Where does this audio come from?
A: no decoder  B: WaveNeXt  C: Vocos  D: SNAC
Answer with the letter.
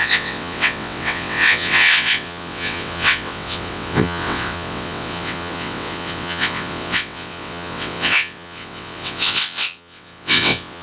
B